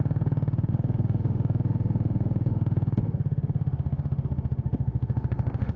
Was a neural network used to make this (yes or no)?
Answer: yes